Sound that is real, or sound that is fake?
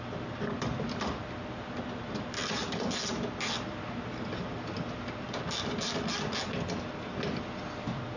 real